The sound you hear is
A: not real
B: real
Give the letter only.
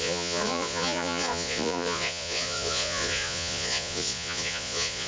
A